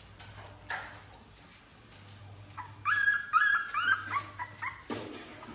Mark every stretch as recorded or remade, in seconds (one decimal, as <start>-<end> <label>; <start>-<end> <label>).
0.0-5.5 recorded

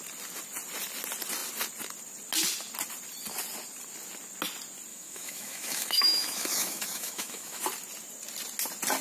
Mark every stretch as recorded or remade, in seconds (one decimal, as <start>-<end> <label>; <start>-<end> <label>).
0.0-4.9 recorded; 4.9-7.6 remade; 7.6-9.0 recorded